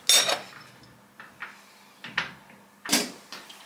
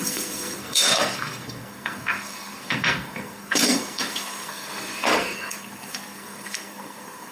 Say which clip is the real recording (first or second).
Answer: first